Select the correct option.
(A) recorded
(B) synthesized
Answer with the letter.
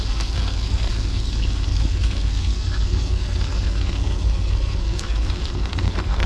B